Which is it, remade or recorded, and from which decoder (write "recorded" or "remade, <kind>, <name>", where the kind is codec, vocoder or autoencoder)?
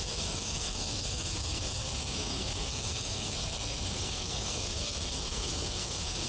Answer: remade, codec, SNAC